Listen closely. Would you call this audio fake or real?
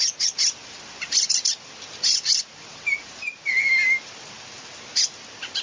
real